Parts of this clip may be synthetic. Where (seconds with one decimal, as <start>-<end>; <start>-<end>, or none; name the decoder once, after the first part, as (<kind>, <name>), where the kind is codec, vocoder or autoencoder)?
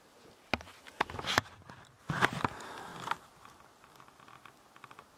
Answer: none